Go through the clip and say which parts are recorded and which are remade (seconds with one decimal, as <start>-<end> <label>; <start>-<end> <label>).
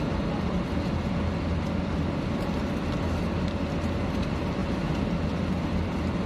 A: 0.0-6.3 recorded